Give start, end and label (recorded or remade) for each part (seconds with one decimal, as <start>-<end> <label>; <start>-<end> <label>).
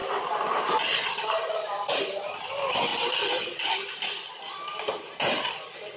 0.0-1.4 recorded; 1.4-6.0 remade